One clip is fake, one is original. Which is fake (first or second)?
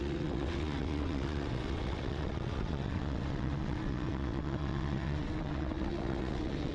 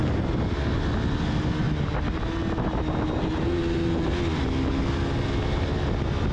first